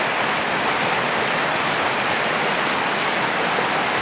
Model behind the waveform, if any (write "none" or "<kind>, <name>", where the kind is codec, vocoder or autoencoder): none